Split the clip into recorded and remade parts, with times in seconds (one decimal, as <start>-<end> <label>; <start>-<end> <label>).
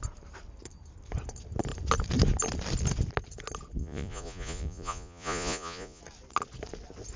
0.0-3.8 recorded; 3.8-6.0 remade; 6.0-7.2 recorded